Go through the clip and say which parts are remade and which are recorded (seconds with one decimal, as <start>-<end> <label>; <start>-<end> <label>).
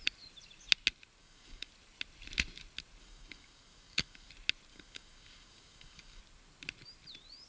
0.0-1.2 recorded; 1.2-1.7 remade; 1.7-3.0 recorded; 3.0-4.3 remade; 4.3-4.7 recorded; 4.7-6.2 remade; 6.2-7.5 recorded